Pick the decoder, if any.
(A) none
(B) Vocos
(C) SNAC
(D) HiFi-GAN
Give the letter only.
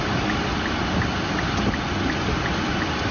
A